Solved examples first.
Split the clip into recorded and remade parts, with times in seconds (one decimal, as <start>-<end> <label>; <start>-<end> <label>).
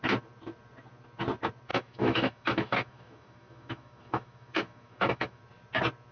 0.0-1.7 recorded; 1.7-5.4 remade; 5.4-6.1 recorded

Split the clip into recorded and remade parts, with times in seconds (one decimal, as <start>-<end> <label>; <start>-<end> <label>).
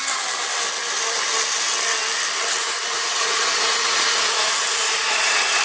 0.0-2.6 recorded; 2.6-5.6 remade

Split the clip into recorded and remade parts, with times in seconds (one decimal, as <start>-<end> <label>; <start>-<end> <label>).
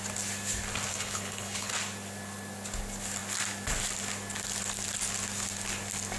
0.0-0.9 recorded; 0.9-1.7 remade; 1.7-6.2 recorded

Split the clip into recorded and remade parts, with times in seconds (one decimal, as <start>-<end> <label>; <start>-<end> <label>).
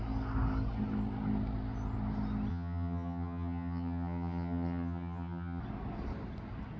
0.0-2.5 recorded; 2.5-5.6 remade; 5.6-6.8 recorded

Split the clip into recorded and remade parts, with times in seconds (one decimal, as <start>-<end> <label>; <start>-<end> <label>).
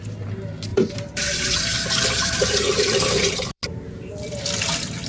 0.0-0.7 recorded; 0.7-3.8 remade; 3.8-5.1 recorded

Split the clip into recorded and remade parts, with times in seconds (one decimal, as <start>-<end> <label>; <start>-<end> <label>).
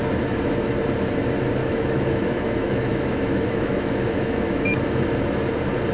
0.0-1.6 recorded; 1.6-5.1 remade; 5.1-5.9 recorded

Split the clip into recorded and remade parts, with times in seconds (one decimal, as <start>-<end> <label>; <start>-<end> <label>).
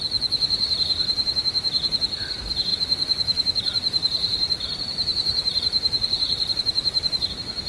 0.0-2.7 recorded; 2.7-7.3 remade; 7.3-7.7 recorded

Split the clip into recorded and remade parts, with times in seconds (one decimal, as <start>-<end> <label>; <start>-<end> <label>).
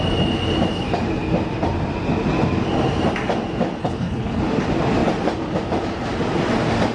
0.0-3.8 recorded; 3.8-4.4 remade; 4.4-6.9 recorded